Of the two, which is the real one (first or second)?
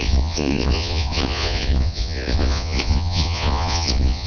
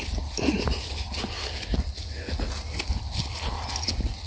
second